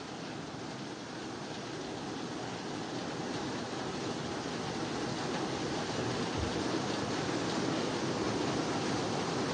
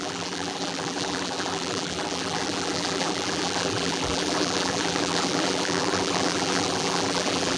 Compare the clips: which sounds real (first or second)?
first